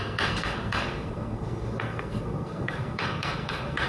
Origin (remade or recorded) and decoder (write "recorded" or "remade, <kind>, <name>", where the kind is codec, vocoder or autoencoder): remade, codec, SNAC